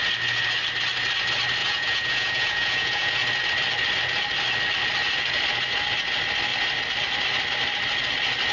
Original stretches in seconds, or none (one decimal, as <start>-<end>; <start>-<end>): 0.0-1.6; 3.1-8.5